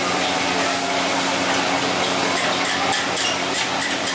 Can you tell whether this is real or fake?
real